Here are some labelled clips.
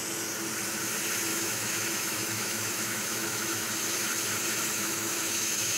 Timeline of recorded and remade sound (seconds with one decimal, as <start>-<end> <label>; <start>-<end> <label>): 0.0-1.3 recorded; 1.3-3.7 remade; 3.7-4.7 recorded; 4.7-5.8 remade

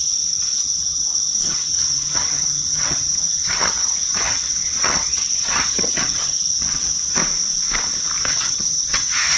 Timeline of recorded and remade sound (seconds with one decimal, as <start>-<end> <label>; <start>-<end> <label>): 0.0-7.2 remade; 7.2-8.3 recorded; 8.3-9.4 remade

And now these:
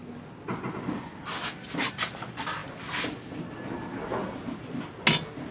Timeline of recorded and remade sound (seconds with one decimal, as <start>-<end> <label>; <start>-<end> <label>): 0.0-5.5 recorded